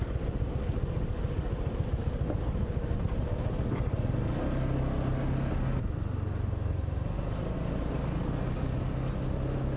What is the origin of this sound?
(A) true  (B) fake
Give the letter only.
A